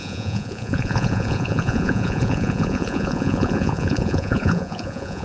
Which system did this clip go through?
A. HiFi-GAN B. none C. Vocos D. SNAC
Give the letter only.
C